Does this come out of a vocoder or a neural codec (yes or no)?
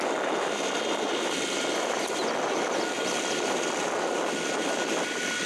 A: yes